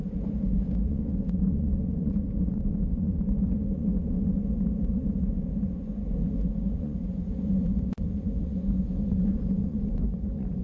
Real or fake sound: fake